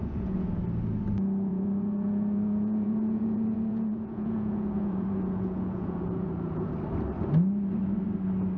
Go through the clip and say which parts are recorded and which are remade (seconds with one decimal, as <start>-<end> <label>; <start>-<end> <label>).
0.0-0.6 remade; 0.6-1.5 recorded; 1.5-6.7 remade; 6.7-8.6 recorded